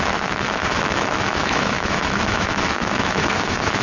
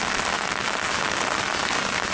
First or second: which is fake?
first